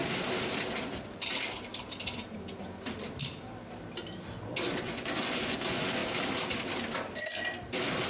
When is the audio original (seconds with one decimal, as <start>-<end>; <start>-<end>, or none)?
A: 0.0-4.8; 6.0-8.1